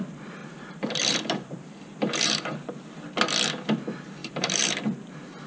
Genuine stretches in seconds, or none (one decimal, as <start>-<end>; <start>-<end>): 0.0-0.4; 2.7-4.2; 4.8-5.5